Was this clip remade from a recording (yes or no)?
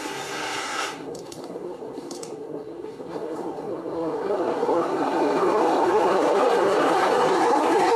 yes